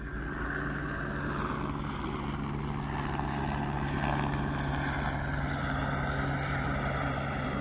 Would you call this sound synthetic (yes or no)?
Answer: no